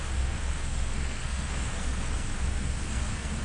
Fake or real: fake